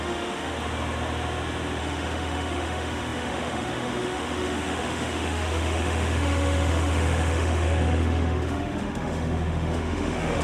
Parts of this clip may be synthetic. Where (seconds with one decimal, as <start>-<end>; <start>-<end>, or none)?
0.0-0.5; 1.8-10.4